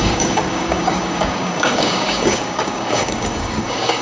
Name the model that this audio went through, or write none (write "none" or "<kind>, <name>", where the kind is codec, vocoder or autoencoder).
codec, DAC